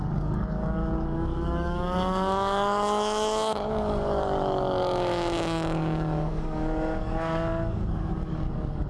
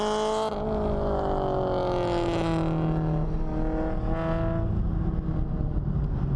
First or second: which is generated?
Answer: first